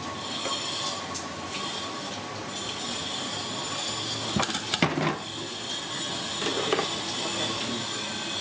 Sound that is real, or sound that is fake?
real